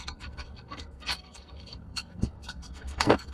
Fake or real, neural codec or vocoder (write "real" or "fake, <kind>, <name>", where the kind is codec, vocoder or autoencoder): fake, codec, SNAC